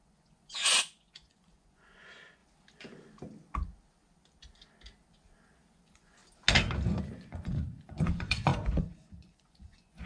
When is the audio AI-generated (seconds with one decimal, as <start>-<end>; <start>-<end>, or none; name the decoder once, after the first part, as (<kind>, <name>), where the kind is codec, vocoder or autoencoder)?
0.0-2.4 (vocoder, Vocos); 5.7-6.2; 7.0-10.1

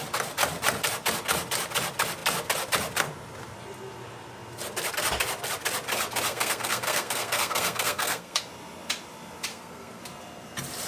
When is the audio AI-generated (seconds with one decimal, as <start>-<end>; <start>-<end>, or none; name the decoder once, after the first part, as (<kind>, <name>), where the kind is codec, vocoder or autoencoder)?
6.3-8.4 (codec, SNAC); 9.5-10.0

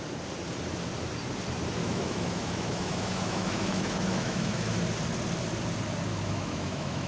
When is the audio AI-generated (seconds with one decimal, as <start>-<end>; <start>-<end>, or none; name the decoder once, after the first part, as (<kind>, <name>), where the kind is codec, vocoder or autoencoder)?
1.8-4.8 (autoencoder, DAC-VAE); 6.1-7.1